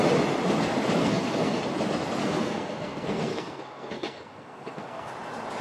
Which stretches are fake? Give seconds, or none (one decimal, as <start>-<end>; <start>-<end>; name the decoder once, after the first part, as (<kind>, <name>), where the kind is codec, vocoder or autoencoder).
1.0-1.6 (codec, SNAC); 2.2-5.1

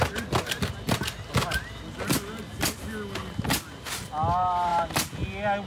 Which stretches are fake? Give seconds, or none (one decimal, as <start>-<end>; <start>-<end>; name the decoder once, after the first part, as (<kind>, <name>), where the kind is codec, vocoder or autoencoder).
none

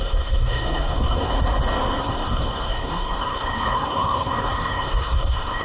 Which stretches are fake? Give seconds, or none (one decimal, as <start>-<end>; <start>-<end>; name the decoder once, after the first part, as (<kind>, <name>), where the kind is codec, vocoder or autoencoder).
0.0-1.3 (codec, SNAC); 2.0-5.6

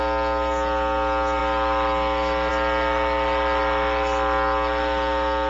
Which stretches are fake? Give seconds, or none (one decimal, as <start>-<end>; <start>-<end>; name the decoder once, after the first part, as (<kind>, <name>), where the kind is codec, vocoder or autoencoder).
none

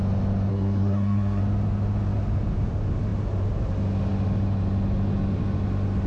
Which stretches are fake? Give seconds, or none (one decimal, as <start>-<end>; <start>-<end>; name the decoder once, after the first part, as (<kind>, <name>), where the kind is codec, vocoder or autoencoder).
0.5-1.4 (codec, SNAC)

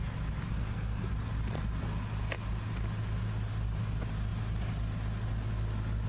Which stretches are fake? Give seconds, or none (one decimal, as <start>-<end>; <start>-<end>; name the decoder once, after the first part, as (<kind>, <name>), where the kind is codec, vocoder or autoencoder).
0.5-1.1 (codec, SNAC)